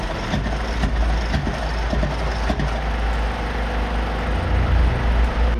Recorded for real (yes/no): yes